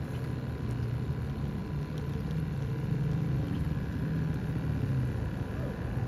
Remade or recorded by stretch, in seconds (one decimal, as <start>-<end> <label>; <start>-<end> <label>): 0.0-6.1 recorded

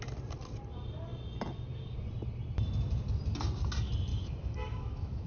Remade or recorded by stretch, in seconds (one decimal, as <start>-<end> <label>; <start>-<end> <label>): 0.0-4.1 recorded; 4.1-5.3 remade

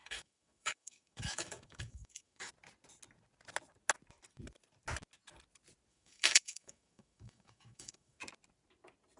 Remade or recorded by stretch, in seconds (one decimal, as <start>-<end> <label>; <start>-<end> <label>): 0.0-2.5 remade; 2.5-5.9 recorded; 5.9-8.2 remade; 8.2-9.2 recorded

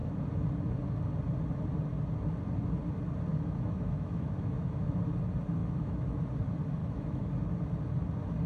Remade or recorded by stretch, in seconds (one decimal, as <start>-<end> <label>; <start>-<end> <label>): 0.0-3.3 recorded; 3.3-5.0 remade; 5.0-5.6 recorded; 5.6-6.2 remade; 6.2-6.8 recorded; 6.8-7.3 remade; 7.3-8.5 recorded

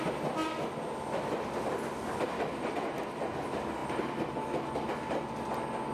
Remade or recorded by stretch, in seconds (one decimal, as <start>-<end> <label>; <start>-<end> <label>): 0.0-5.9 recorded

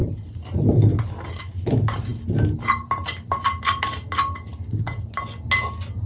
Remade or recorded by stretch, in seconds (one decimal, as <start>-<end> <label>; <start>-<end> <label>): 0.0-6.1 recorded

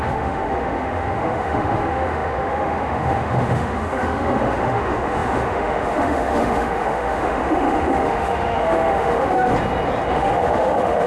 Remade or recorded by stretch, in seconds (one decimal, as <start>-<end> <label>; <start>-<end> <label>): 0.0-9.5 remade; 9.5-10.1 recorded; 10.1-11.1 remade